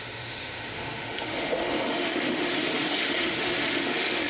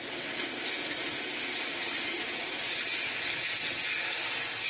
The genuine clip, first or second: second